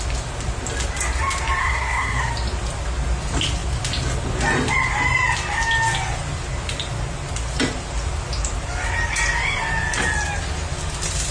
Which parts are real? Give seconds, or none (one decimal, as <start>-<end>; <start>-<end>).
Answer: 0.0-1.6; 2.3-11.3